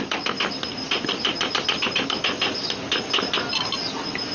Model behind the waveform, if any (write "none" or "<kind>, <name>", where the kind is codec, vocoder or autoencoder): none